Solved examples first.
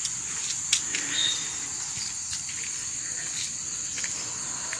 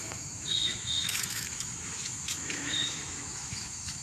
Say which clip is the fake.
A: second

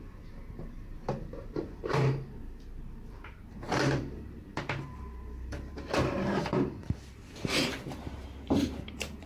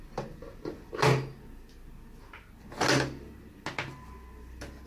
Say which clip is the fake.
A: first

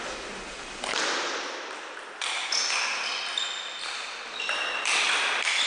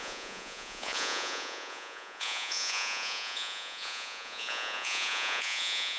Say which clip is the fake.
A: second